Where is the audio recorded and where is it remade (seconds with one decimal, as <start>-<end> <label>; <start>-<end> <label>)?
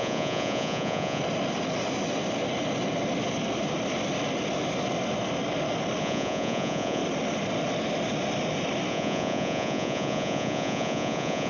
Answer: 0.0-1.2 remade; 1.2-6.0 recorded; 6.0-7.0 remade; 7.0-8.9 recorded; 8.9-11.5 remade